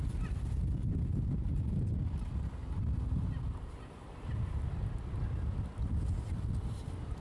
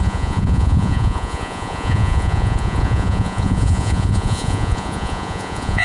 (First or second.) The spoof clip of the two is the second